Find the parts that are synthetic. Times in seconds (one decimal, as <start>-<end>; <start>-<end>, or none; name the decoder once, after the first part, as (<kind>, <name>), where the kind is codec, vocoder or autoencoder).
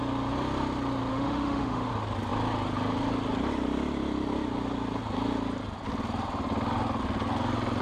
1.1-1.9 (autoencoder, DAC-VAE)